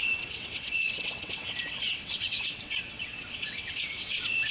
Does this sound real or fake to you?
fake